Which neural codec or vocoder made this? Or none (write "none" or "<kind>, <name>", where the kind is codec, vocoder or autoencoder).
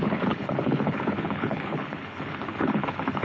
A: codec, HILCodec